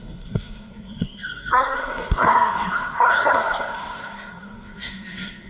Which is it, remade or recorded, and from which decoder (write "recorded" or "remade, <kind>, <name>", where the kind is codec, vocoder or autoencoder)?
remade, codec, SNAC